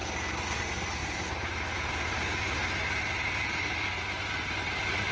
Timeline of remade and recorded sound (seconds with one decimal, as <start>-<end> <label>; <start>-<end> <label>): 0.0-1.0 recorded; 1.0-4.0 remade; 4.0-5.1 recorded

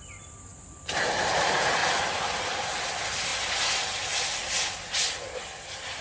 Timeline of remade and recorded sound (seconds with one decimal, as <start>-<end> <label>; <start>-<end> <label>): 0.0-1.8 remade; 1.8-2.6 recorded; 2.6-3.3 remade; 3.3-6.0 recorded